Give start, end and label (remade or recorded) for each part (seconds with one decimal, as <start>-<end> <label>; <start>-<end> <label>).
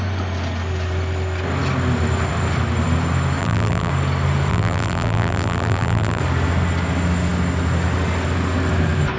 0.0-3.4 recorded; 3.4-3.9 remade; 3.9-4.5 recorded; 4.5-6.2 remade; 6.2-9.2 recorded